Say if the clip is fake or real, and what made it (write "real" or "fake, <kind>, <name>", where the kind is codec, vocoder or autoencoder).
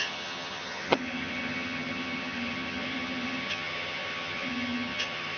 fake, vocoder, HiFi-GAN